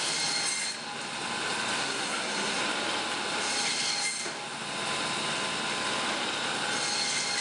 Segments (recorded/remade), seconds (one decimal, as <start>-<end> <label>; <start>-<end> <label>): 0.0-1.8 recorded; 1.8-2.6 remade; 2.6-7.4 recorded